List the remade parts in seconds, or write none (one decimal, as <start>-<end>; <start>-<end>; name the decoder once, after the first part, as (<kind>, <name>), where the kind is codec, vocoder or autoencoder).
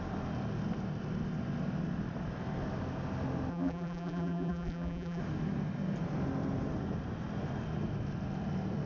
3.5-5.2 (vocoder, BigVGAN v2)